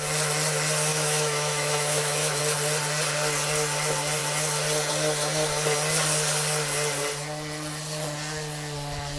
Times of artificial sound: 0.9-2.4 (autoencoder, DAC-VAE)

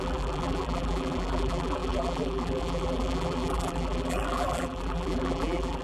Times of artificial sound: 0.0-5.8 (vocoder, BigVGAN v2)

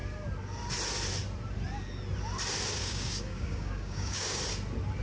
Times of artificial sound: 2.8-4.4 (codec, DAC)

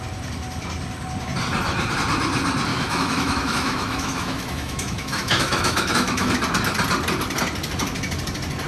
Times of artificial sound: 2.7-6.3 (autoencoder, DAC-VAE)

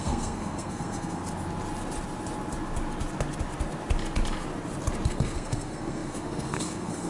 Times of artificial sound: 0.0-1.2 (codec, SNAC); 5.1-7.1

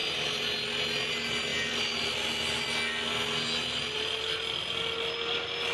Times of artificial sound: none